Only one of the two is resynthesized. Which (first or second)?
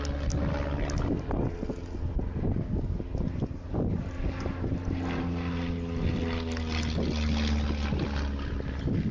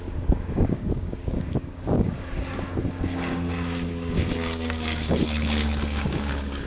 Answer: second